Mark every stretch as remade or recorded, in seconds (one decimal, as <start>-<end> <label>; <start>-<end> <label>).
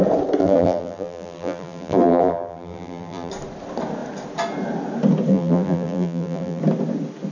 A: 0.0-0.4 recorded; 0.4-3.3 remade; 3.3-5.3 recorded; 5.3-6.6 remade; 6.6-7.3 recorded